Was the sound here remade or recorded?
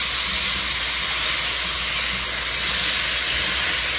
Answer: recorded